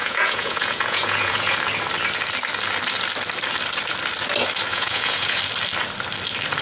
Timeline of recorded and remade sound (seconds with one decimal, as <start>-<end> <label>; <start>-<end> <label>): 0.0-1.6 remade; 1.6-4.7 recorded; 4.7-5.4 remade; 5.4-6.6 recorded